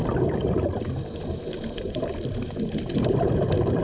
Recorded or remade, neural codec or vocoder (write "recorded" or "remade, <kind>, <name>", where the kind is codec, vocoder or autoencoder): remade, vocoder, BigVGAN v2